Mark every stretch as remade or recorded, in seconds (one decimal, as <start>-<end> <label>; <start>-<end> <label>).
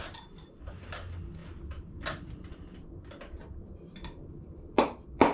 0.0-1.4 recorded; 1.4-4.6 remade; 4.6-5.3 recorded